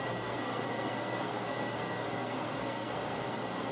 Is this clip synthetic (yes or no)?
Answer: yes